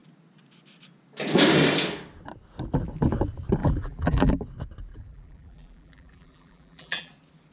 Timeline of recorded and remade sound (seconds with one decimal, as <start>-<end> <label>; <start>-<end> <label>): 0.0-3.6 recorded; 3.6-4.3 remade; 4.3-4.9 recorded; 4.9-7.1 remade; 7.1-7.5 recorded